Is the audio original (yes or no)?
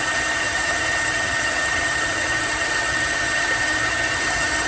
no